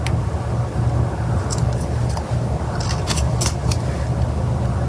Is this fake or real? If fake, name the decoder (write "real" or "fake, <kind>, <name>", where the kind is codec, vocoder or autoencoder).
real